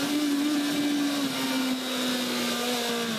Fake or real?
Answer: real